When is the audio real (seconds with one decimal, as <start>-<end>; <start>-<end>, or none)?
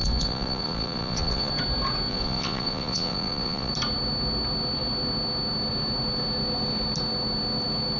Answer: 1.5-2.1; 3.7-8.0